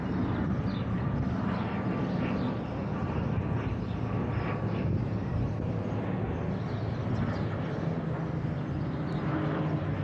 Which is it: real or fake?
real